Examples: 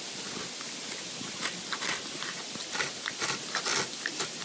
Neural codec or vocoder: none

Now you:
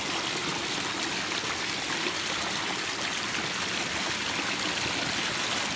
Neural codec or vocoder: none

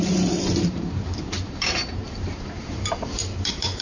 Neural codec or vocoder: vocoder, BigVGAN v2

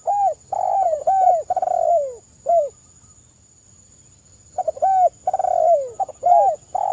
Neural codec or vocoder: none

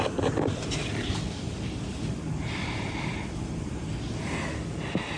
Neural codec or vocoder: none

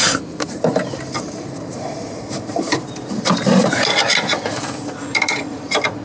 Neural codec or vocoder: vocoder, BigVGAN v2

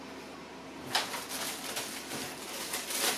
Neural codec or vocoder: none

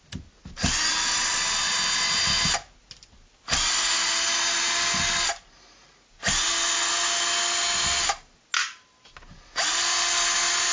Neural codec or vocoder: none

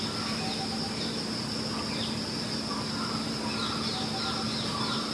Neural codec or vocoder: none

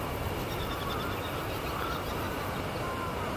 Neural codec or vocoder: vocoder, BigVGAN v2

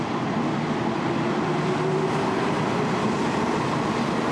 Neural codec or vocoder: none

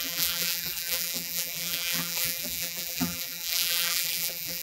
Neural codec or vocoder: vocoder, BigVGAN v2